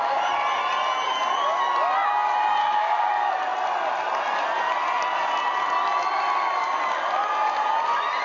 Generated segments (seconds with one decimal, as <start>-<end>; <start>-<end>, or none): 2.6-3.1